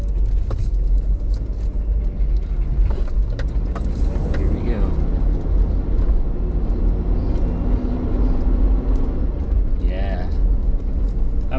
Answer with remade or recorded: recorded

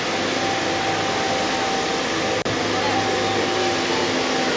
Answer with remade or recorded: recorded